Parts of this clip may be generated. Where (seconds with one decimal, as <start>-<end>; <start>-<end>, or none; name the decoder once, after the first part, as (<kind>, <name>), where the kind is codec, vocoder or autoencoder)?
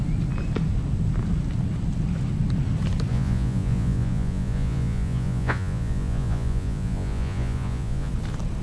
3.1-8.1 (vocoder, Vocos)